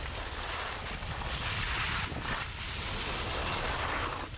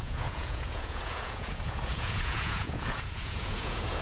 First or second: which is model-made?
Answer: second